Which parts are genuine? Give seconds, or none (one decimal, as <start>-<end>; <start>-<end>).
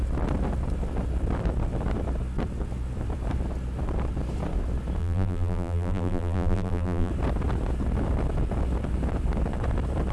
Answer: 0.0-5.0; 7.1-10.1